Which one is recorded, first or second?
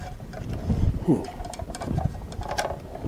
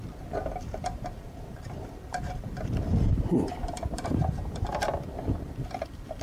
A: first